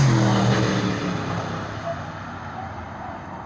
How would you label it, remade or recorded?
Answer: recorded